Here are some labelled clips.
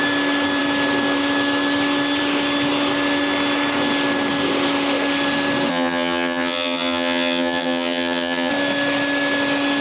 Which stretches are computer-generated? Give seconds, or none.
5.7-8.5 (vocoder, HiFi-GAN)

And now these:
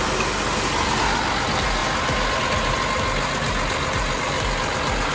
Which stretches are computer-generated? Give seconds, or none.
none

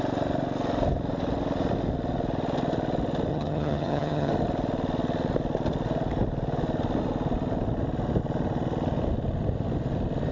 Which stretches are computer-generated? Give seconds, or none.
3.3-4.3 (vocoder, HiFi-GAN)

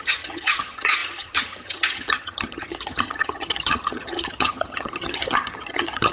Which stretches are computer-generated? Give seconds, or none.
0.0-6.1 (vocoder, HiFi-GAN)

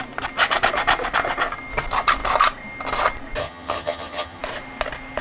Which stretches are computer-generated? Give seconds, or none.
3.4-4.4 (vocoder, HiFi-GAN)

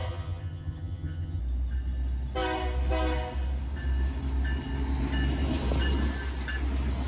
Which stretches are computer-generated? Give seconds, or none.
0.0-1.4 (vocoder, HiFi-GAN)

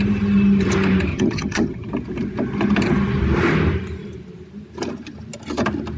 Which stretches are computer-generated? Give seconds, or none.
1.1-1.9 (vocoder, HiFi-GAN)